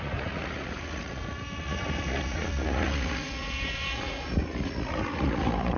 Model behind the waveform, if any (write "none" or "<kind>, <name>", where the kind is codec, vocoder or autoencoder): vocoder, Vocos